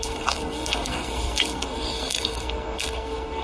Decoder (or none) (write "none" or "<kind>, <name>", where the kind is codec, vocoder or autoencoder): codec, SNAC